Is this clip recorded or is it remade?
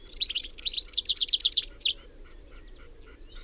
recorded